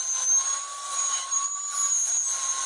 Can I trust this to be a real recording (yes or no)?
yes